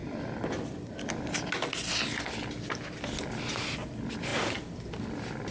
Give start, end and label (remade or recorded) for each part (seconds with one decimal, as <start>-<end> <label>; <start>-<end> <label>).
0.0-5.5 recorded